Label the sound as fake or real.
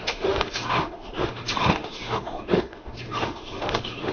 fake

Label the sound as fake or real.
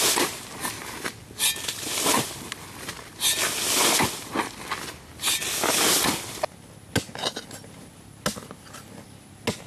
real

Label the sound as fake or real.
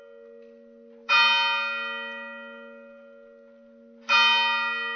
real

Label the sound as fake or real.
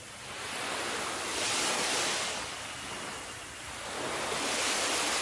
real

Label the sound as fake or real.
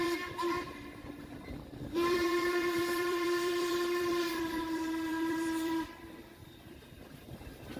fake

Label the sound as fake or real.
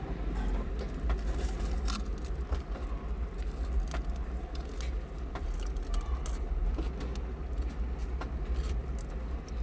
real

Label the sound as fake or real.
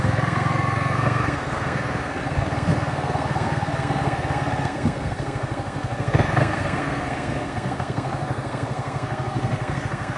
fake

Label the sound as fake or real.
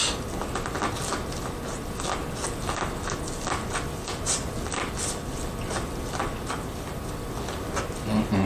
real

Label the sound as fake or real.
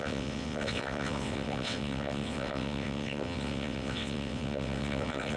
fake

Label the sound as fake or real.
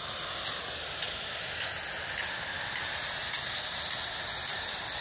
real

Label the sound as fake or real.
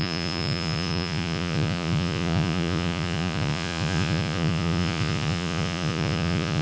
fake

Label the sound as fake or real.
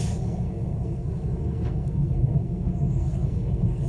fake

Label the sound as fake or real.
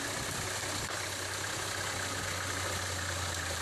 real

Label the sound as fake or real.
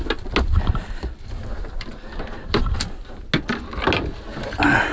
real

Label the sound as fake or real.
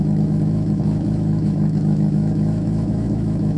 fake